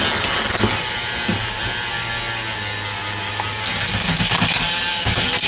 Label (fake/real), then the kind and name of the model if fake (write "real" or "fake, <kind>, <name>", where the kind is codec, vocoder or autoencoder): real